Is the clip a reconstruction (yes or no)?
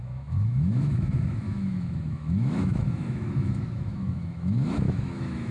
yes